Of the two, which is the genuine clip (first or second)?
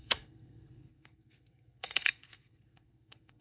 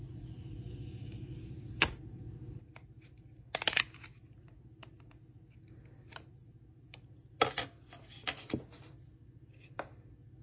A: second